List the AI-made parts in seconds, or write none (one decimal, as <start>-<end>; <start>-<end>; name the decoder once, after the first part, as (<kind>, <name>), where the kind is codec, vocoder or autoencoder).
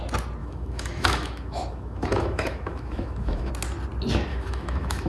0.4-3.5 (autoencoder, DAC-VAE); 4.3-5.1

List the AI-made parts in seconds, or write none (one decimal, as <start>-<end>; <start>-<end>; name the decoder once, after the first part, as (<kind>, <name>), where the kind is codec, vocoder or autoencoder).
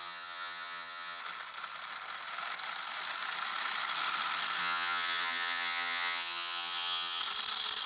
0.0-1.2 (vocoder, HiFi-GAN); 4.6-7.2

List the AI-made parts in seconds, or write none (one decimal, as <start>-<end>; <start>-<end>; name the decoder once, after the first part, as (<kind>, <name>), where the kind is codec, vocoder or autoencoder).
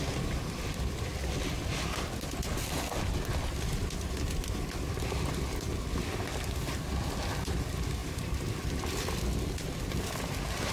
8.0-8.8 (vocoder, BigVGAN v2)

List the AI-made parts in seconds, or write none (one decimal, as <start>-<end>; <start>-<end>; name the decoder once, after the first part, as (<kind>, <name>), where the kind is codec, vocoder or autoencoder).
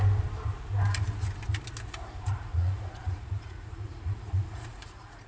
2.3-5.3 (vocoder, Vocos)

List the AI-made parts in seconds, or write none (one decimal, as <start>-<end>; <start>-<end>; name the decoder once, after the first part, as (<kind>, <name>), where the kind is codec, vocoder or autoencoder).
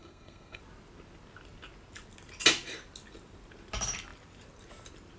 0.0-0.6 (codec, SNAC)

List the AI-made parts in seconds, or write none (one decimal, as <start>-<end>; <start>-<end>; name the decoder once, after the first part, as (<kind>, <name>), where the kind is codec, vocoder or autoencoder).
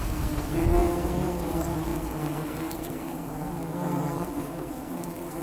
0.0-5.4 (codec, SNAC)